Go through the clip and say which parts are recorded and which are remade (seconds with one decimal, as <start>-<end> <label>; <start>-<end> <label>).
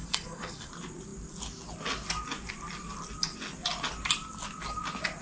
0.0-0.7 remade; 0.7-5.2 recorded